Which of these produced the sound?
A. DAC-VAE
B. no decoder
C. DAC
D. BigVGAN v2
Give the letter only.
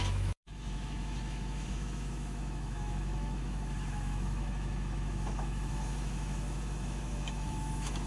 A